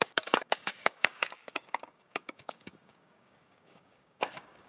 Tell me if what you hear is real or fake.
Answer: fake